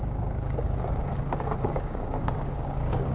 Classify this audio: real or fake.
fake